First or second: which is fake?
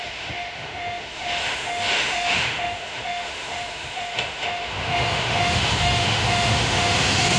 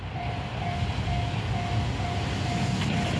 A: first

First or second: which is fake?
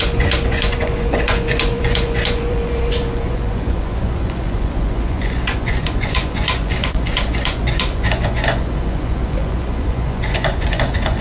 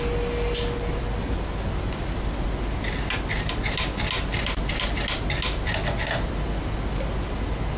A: first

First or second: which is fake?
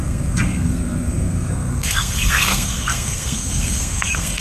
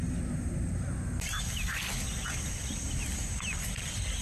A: first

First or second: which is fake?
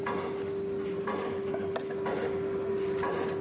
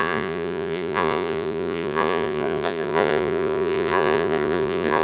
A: second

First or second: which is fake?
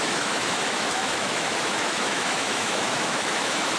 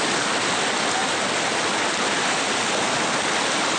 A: first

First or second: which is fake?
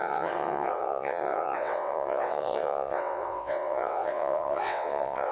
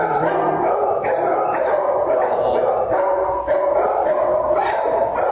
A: first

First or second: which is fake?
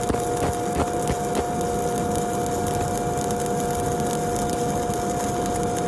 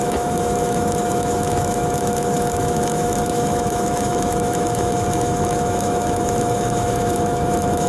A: second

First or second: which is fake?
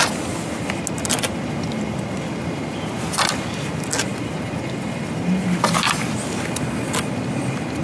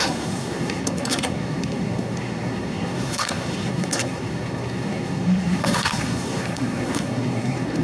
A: second